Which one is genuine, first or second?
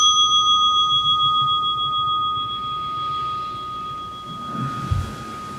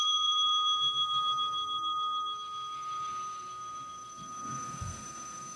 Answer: first